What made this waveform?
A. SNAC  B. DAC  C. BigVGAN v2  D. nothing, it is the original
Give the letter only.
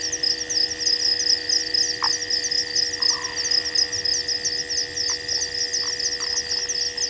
D